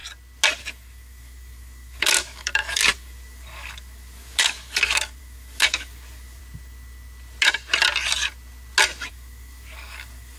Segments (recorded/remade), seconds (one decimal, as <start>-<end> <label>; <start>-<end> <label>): 0.0-0.6 recorded; 0.6-6.4 remade; 6.4-9.1 recorded; 9.1-10.4 remade